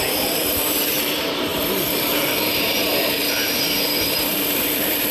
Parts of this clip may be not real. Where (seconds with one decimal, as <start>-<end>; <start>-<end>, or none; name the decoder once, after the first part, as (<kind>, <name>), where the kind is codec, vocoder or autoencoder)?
0.0-5.1 (vocoder, BigVGAN v2)